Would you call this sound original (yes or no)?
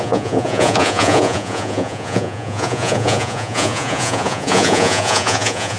no